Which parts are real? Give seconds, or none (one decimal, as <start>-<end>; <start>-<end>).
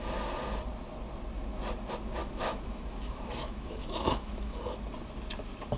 0.0-2.2; 4.6-5.8